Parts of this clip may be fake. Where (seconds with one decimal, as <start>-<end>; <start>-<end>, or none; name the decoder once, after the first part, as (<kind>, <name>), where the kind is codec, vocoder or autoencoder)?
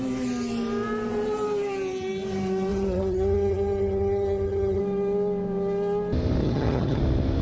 2.7-4.8 (vocoder, HiFi-GAN); 6.4-7.0